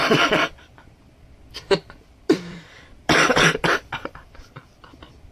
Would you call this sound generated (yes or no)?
yes